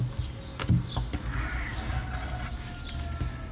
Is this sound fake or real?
real